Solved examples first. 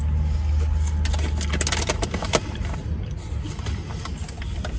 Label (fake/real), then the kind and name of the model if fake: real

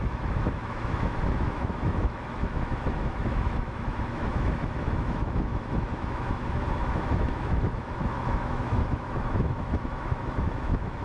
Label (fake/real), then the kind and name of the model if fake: fake, autoencoder, DAC-VAE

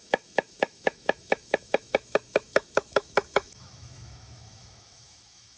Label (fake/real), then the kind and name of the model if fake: fake, autoencoder, DAC-VAE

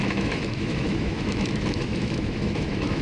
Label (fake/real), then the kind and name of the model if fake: fake, autoencoder, DAC-VAE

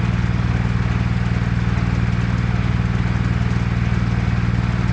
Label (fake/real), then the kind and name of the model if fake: real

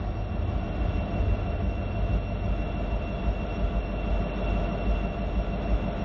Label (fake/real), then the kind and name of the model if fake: real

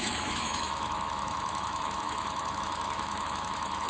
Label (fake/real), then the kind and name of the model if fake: fake, autoencoder, DAC-VAE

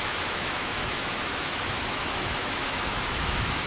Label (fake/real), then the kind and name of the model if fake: fake, autoencoder, DAC-VAE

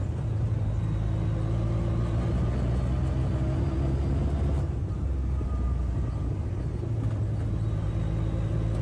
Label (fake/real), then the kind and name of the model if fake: real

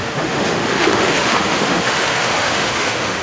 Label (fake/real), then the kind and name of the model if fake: fake, autoencoder, DAC-VAE